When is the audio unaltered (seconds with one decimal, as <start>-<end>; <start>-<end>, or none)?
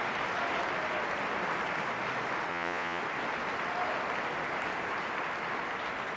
0.0-2.5; 3.0-6.2